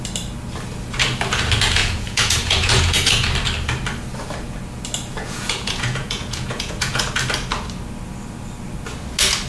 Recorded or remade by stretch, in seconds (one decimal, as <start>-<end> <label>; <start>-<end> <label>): 0.0-1.8 recorded; 1.8-3.3 remade; 3.3-5.1 recorded; 5.1-7.0 remade; 7.0-9.5 recorded